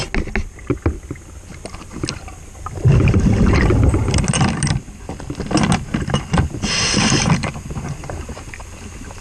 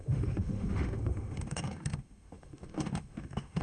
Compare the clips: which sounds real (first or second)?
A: first